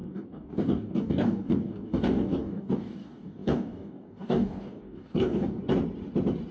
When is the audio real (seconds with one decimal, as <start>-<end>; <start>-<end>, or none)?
5.6-6.5